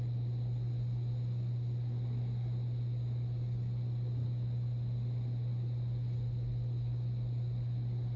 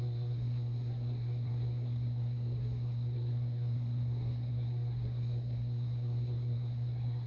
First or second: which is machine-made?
second